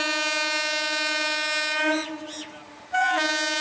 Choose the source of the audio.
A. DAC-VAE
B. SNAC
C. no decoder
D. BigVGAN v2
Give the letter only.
C